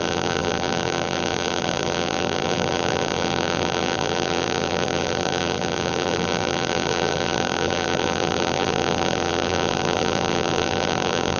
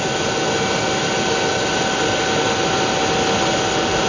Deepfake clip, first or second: first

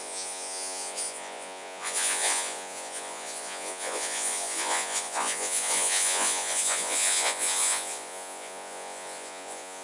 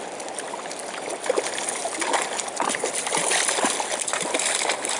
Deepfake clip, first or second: first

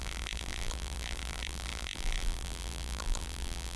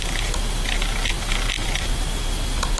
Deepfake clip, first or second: first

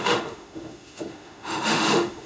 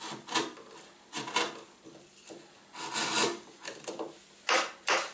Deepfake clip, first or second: first